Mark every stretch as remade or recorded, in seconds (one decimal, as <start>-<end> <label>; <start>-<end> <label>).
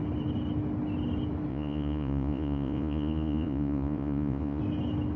0.0-1.5 recorded; 1.5-4.6 remade; 4.6-5.2 recorded